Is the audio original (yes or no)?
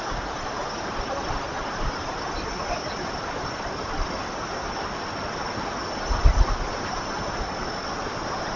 yes